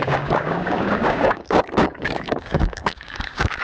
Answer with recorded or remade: remade